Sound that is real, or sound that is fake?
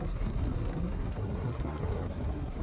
fake